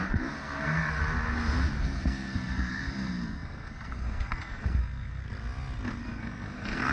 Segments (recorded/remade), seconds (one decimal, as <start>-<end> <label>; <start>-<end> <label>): 0.0-1.0 remade; 1.0-1.8 recorded; 1.8-5.2 remade; 5.2-6.0 recorded; 6.0-6.9 remade